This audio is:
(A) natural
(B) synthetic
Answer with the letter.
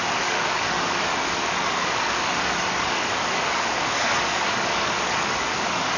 B